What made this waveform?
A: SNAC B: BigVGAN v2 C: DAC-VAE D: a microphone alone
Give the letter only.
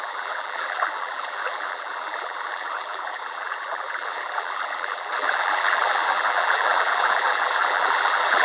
B